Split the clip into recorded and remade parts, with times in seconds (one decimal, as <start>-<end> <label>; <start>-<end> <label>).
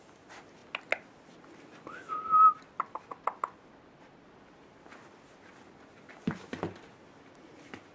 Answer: 0.0-7.9 recorded